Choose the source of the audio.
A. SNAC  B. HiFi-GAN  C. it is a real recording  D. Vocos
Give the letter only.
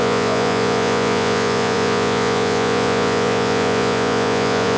D